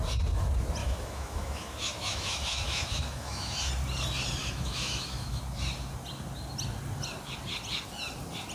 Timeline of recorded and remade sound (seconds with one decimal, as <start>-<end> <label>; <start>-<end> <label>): 0.0-0.8 recorded; 0.8-3.7 remade; 3.7-4.4 recorded; 4.4-5.4 remade; 5.4-8.5 recorded